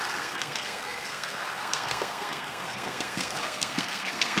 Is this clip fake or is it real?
fake